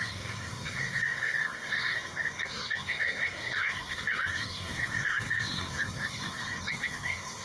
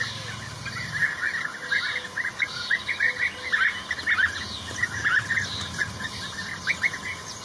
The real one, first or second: second